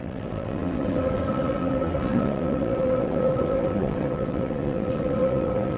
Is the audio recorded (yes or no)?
no